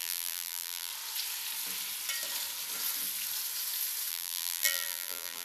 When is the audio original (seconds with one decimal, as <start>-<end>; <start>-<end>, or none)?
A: 0.9-4.1